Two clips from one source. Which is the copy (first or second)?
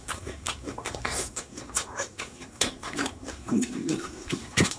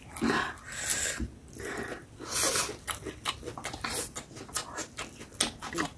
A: first